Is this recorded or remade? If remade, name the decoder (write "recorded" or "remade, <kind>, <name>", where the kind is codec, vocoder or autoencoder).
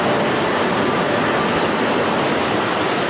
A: recorded